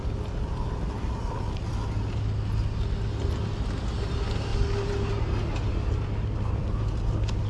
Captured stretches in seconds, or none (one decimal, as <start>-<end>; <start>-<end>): 0.0-7.5